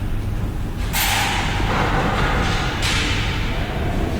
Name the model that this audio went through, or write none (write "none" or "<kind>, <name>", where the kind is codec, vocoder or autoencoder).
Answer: none